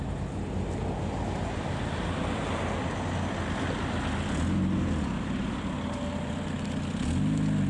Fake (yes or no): no